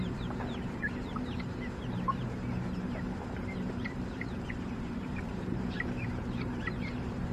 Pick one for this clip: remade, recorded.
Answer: remade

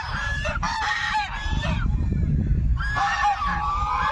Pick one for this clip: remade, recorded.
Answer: remade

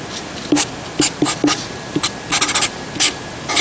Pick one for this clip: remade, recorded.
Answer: recorded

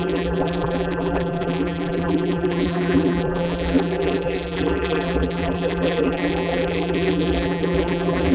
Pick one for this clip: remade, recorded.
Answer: remade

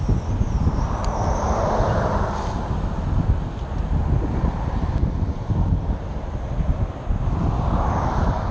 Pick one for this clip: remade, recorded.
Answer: recorded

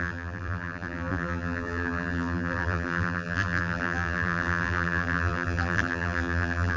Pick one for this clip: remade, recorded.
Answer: remade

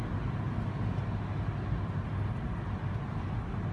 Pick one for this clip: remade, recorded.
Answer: recorded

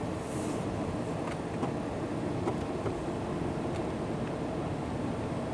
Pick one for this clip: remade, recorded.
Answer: recorded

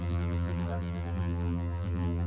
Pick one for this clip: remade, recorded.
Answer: remade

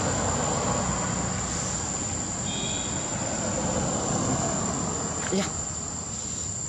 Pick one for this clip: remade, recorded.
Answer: recorded